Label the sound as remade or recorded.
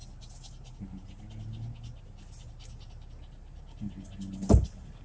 recorded